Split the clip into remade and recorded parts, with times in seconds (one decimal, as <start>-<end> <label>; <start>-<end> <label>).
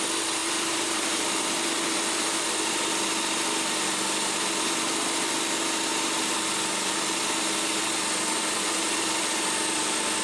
0.0-0.4 recorded; 0.4-1.4 remade; 1.4-10.2 recorded